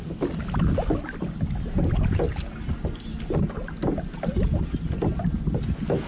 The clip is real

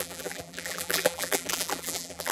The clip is fake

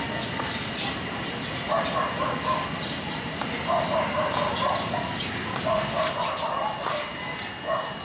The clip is real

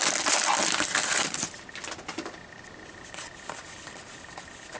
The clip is real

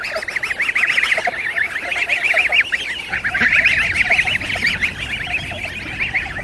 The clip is real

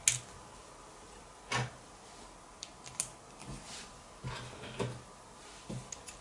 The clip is real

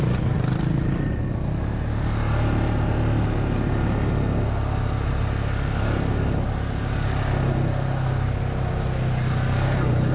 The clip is real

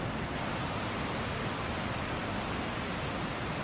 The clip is real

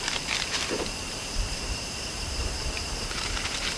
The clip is fake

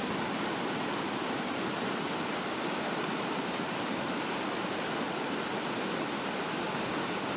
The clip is real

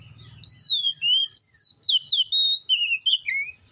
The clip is real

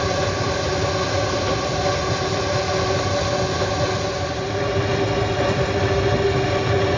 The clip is real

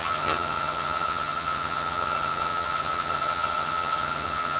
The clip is fake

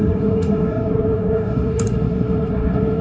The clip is fake